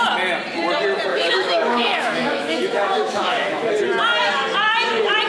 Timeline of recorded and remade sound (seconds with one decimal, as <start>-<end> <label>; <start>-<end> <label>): 0.0-1.1 recorded; 1.1-3.7 remade; 3.7-5.3 recorded